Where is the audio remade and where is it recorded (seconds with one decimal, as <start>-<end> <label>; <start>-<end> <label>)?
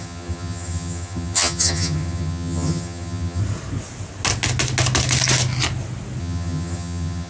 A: 0.0-3.4 remade; 3.4-6.2 recorded; 6.2-7.3 remade